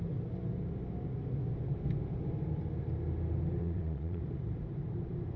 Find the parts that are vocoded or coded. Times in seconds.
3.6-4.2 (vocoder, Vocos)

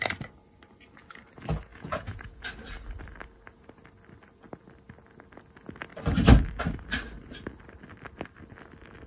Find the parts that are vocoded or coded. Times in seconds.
1.7-2.4 (vocoder, Vocos)

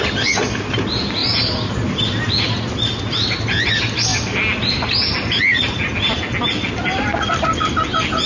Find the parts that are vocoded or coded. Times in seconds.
none

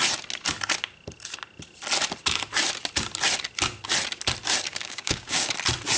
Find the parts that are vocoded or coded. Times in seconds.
4.7-5.5 (codec, DAC)